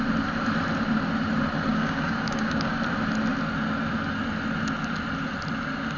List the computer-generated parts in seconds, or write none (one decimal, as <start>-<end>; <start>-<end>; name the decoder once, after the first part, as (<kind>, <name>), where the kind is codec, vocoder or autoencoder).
1.7-2.8 (codec, DAC)